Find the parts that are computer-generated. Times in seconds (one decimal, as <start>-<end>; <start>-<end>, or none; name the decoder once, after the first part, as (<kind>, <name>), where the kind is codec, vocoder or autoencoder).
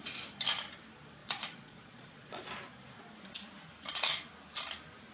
1.2-2.4 (vocoder, Vocos)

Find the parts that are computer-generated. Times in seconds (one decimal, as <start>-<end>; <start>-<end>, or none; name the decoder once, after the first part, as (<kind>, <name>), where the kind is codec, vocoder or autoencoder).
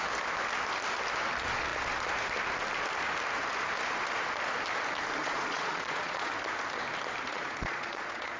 5.2-6.3 (vocoder, Vocos); 7.3-8.4